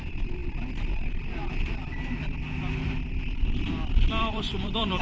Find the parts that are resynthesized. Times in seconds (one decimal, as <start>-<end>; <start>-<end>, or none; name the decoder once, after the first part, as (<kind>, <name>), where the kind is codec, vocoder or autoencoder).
4.2-5.0 (vocoder, BigVGAN v2)